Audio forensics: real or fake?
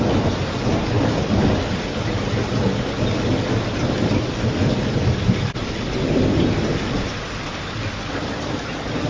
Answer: real